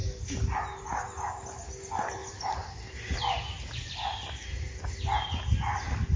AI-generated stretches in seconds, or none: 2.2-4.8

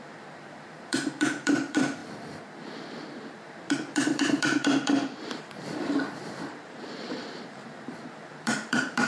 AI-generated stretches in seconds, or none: 0.0-9.1

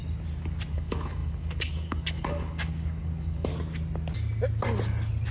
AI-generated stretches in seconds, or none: 0.7-3.5

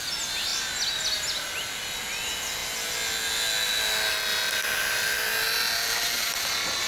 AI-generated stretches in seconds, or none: none

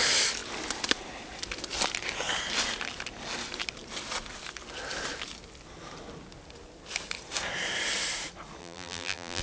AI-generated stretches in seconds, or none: 8.6-9.4